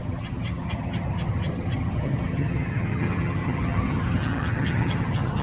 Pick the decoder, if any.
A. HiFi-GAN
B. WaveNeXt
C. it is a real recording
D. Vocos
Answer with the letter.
A